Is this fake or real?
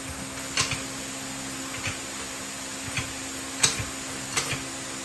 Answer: real